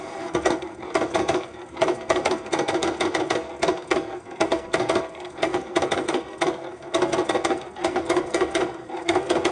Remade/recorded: remade